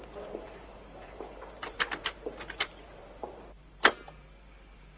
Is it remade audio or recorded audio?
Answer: remade